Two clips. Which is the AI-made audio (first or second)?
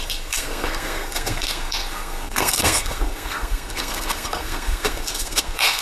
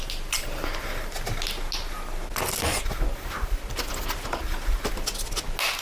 first